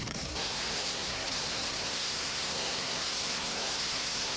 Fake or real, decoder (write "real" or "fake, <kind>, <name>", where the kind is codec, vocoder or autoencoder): fake, codec, SNAC